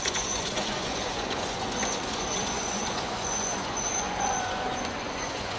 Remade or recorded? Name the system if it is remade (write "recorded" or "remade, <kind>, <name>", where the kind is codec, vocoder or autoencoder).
remade, vocoder, Vocos